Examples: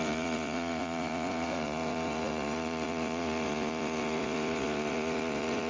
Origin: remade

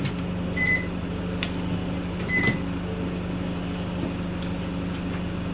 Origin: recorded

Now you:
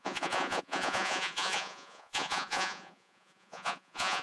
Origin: remade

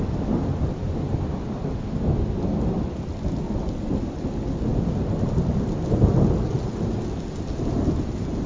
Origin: recorded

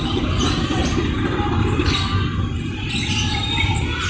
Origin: recorded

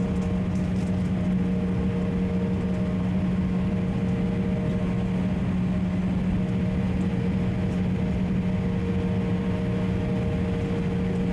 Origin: recorded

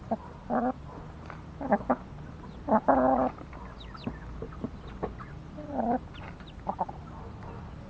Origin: recorded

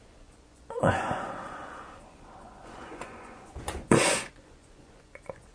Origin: remade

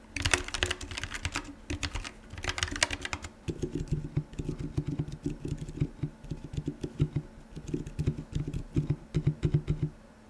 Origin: recorded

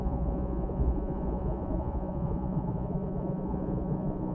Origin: remade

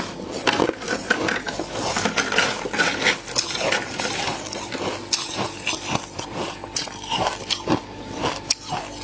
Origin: recorded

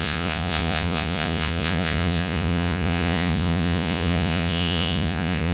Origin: remade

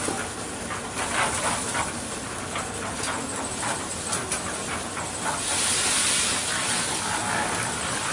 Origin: recorded